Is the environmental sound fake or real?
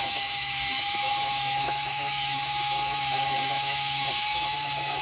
fake